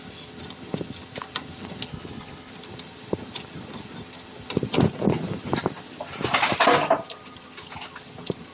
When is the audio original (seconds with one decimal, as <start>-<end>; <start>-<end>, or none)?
0.0-1.9; 2.5-8.5